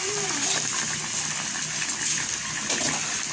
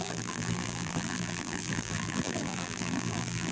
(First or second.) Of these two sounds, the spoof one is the second